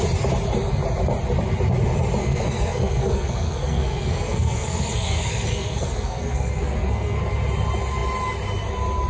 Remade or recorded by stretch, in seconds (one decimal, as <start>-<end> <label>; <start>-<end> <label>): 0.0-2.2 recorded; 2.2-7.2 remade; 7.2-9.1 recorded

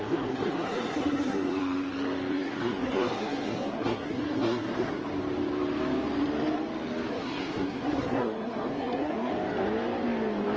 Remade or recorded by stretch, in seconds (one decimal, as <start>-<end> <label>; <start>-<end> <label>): 0.0-1.6 remade; 1.6-2.3 recorded; 2.3-5.0 remade; 5.0-7.1 recorded; 7.1-9.3 remade; 9.3-10.6 recorded

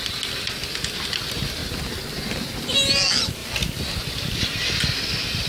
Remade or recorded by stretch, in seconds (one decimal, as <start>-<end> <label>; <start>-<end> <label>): 0.0-5.5 recorded

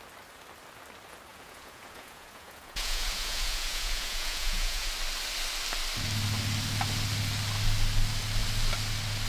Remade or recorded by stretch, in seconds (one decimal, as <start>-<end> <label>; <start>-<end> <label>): 0.0-1.3 recorded; 1.3-4.9 remade; 4.9-9.3 recorded

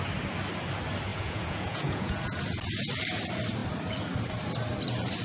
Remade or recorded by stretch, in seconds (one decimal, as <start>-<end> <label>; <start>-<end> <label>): 0.0-1.1 recorded; 1.1-2.2 remade; 2.2-5.2 recorded

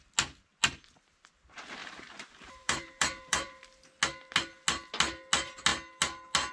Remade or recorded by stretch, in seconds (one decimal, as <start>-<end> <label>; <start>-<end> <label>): 0.0-1.8 recorded; 1.8-3.6 remade; 3.6-6.5 recorded